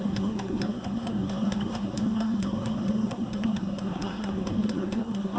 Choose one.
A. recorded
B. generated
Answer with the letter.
B